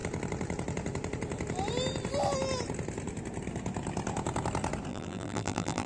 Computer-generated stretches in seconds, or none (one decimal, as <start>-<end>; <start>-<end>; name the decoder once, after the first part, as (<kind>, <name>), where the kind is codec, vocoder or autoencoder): 4.9-5.9 (vocoder, BigVGAN v2)